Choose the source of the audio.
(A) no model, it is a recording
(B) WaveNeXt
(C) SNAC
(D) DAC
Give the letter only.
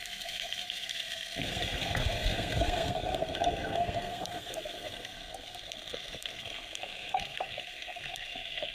C